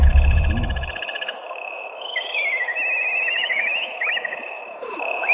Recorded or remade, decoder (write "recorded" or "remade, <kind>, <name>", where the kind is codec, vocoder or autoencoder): remade, autoencoder, DAC-VAE